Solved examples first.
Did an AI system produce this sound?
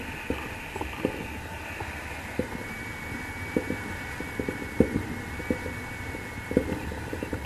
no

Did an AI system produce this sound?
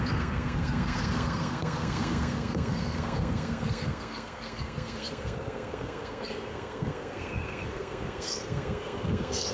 yes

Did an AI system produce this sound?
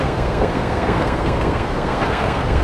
yes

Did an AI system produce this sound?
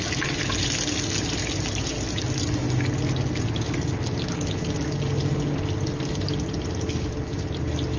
no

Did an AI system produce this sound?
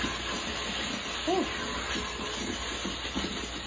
no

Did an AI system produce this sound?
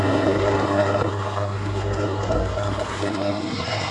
yes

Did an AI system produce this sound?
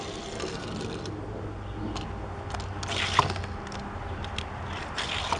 no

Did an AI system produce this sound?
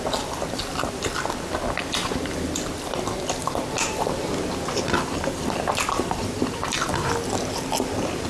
no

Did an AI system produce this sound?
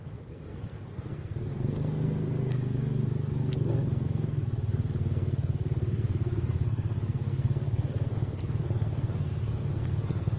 yes